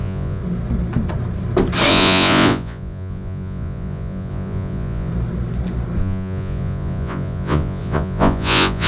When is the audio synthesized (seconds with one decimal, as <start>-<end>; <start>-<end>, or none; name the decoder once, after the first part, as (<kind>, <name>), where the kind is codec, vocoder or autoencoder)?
0.0-0.4 (vocoder, Vocos); 1.9-5.1; 6.0-8.9